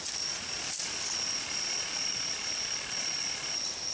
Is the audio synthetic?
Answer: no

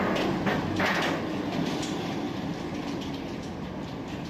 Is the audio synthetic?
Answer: no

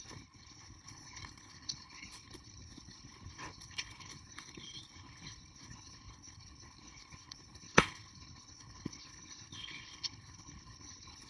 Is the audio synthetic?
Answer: yes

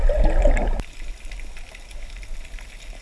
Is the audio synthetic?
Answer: no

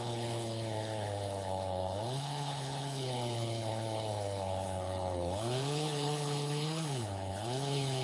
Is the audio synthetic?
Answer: yes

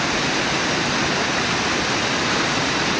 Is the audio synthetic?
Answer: no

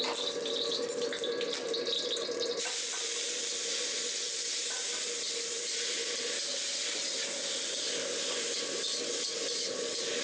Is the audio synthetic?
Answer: no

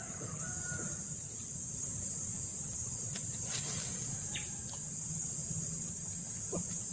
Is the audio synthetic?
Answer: no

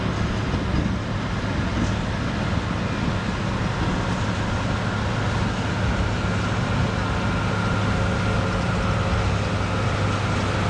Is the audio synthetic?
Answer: no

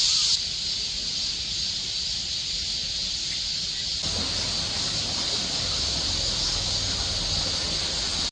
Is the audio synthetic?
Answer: no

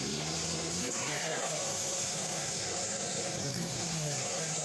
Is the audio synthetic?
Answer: yes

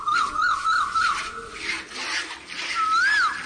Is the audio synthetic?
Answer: no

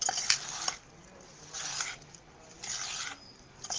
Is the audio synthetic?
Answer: no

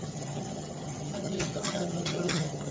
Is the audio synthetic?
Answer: yes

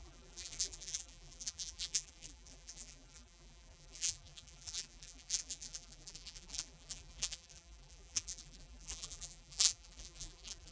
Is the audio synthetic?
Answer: yes